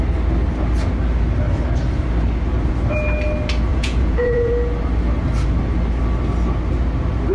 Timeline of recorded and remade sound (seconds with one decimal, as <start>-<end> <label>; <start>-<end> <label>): 0.0-3.7 recorded; 3.7-4.5 remade; 4.5-7.3 recorded